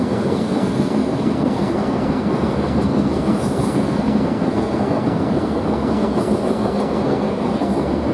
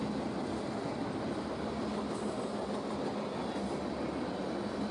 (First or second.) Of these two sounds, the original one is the second